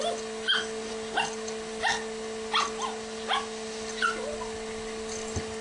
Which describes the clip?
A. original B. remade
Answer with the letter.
A